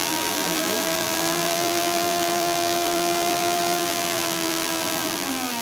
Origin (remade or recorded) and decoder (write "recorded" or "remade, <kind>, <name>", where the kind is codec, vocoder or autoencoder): remade, vocoder, BigVGAN v2